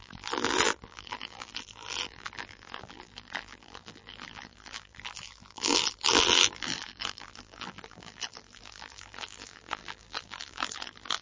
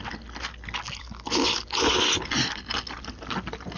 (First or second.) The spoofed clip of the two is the first